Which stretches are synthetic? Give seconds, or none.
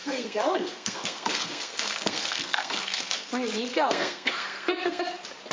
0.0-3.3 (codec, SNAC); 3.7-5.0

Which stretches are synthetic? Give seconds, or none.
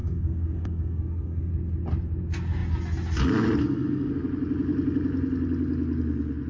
0.0-1.5 (codec, SNAC); 3.6-4.1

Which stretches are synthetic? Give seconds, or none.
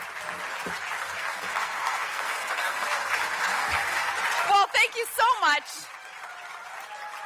1.0-4.1 (codec, SNAC)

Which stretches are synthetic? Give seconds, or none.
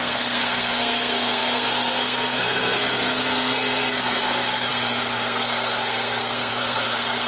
0.0-7.3 (codec, SNAC)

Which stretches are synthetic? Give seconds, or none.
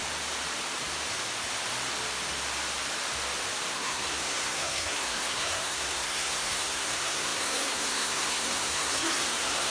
3.7-9.7 (codec, SNAC)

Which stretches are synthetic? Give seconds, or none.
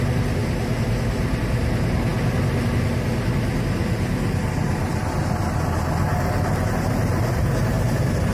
none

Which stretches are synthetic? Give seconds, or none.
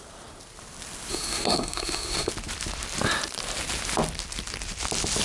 1.1-2.3 (codec, SNAC)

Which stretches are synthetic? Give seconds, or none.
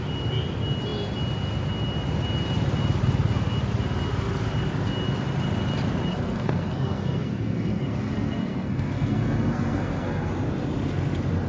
6.1-10.3 (codec, SNAC)